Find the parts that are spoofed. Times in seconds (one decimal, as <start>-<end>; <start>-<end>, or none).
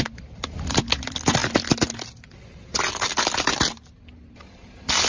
none